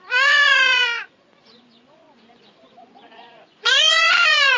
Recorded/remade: remade